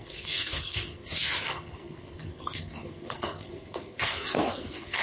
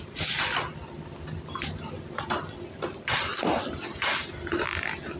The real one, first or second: second